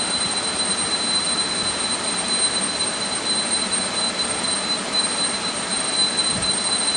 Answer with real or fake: real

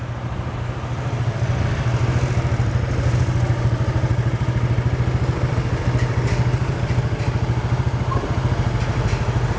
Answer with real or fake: real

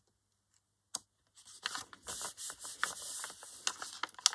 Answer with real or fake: real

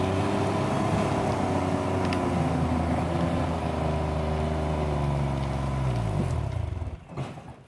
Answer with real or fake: real